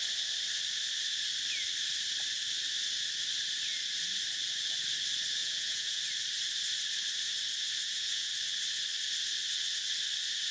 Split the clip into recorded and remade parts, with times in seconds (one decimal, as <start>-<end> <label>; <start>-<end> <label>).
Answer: 0.0-5.4 recorded; 5.4-6.0 remade; 6.0-7.8 recorded; 7.8-8.3 remade; 8.3-10.5 recorded